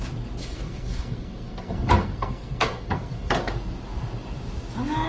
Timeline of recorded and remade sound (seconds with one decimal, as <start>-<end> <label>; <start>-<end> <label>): 0.0-0.4 recorded; 0.4-3.5 remade; 3.5-5.1 recorded